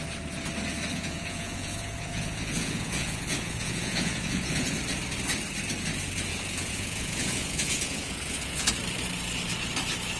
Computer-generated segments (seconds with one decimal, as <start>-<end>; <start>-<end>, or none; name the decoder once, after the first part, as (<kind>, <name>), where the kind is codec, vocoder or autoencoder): 0.9-4.8 (vocoder, Vocos); 6.3-8.7